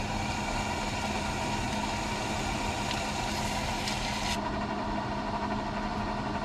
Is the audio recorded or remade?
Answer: recorded